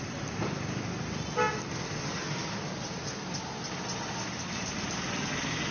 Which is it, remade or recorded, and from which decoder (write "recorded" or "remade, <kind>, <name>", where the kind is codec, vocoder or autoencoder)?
recorded